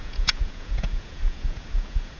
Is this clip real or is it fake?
fake